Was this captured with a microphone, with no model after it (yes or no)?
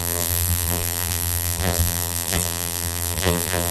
no